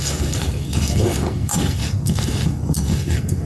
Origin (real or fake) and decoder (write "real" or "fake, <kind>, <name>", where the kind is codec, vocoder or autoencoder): fake, codec, SNAC